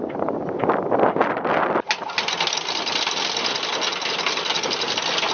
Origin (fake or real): real